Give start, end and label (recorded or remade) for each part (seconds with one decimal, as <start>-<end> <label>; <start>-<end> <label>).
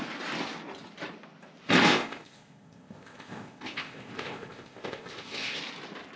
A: 0.0-1.9 recorded; 1.9-5.6 remade; 5.6-6.2 recorded